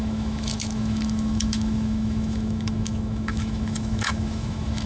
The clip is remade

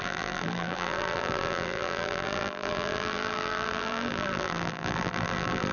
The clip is remade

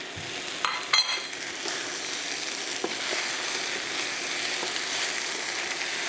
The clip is recorded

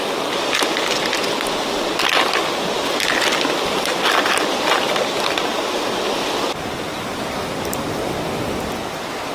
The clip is recorded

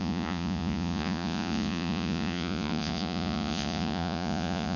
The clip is remade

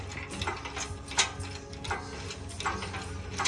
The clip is recorded